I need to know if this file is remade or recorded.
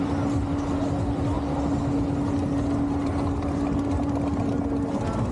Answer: recorded